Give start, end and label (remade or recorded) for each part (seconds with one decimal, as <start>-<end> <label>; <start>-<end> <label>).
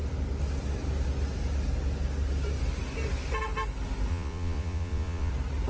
0.0-4.1 recorded; 4.1-5.3 remade; 5.3-5.7 recorded